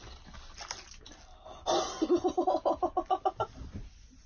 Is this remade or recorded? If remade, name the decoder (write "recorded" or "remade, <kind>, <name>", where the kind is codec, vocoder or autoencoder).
recorded